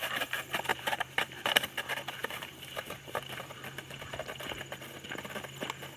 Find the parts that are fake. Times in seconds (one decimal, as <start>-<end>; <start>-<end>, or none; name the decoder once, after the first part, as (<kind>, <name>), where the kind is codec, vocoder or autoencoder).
0.7-1.6 (vocoder, BigVGAN v2); 2.2-4.1